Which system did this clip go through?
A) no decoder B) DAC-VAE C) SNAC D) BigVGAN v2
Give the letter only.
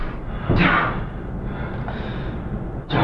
A